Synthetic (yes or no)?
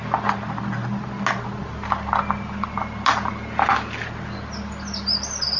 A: no